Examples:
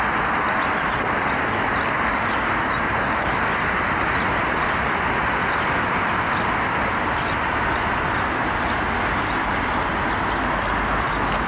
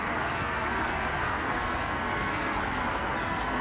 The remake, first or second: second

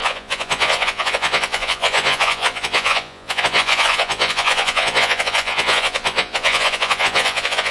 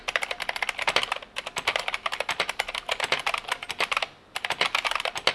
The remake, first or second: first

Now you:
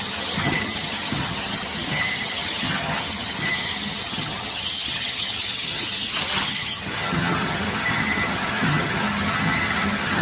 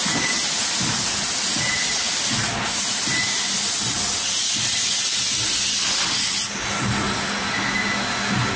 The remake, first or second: first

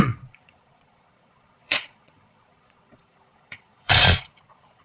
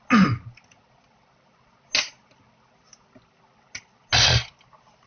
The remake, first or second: first